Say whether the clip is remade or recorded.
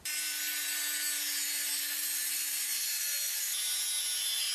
recorded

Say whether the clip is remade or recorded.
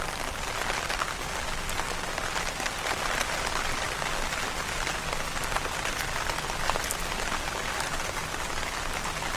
recorded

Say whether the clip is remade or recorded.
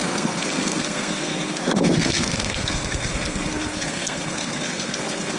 remade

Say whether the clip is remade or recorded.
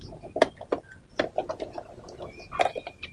recorded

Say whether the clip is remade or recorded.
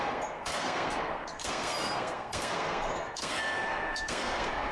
remade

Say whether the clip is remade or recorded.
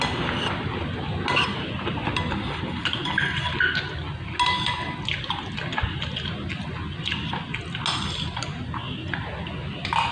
recorded